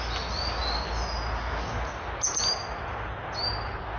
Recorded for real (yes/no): yes